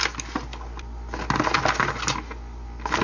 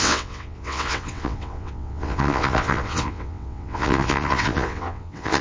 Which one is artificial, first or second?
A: second